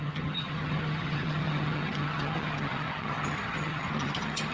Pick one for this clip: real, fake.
fake